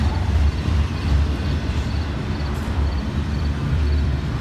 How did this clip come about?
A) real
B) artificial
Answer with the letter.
B